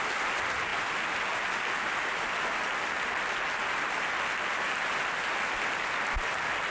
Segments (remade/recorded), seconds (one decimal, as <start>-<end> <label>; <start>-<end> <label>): 0.0-6.7 recorded